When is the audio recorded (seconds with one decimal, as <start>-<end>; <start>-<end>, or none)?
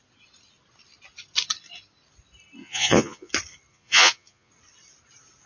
0.0-2.6; 3.3-3.7; 4.5-5.5